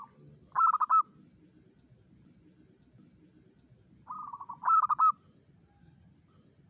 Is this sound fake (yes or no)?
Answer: no